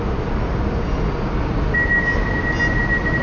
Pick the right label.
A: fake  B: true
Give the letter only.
B